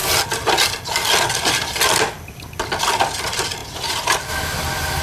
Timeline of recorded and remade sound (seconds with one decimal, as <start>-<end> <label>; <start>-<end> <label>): 0.0-3.6 recorded; 3.6-4.2 remade; 4.2-5.0 recorded

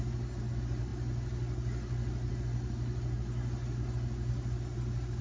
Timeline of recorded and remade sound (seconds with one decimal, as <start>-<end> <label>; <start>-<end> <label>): 0.0-5.2 recorded